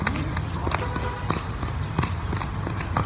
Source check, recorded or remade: recorded